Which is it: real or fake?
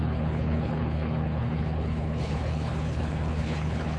fake